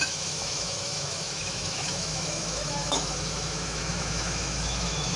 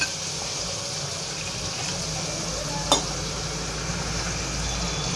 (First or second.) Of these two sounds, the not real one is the first